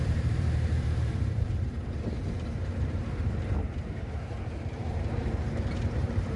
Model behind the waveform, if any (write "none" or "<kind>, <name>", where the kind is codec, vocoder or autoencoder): vocoder, BigVGAN v2